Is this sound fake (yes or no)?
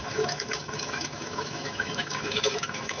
yes